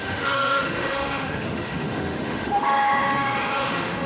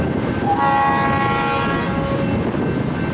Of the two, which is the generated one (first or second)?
first